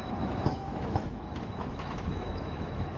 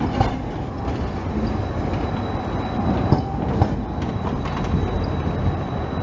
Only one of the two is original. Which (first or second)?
second